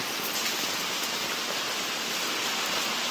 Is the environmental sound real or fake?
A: real